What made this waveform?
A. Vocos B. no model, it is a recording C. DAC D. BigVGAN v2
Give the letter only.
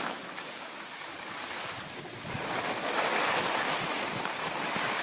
B